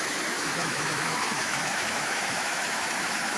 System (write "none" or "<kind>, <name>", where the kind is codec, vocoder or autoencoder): autoencoder, DAC-VAE